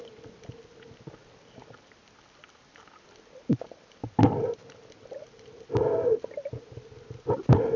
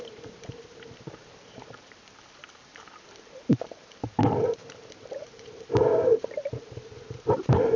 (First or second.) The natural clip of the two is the first